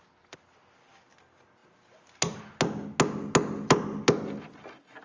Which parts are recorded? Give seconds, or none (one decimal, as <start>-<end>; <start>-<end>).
0.0-5.0